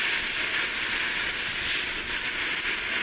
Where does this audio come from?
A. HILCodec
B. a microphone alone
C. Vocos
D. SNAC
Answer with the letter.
B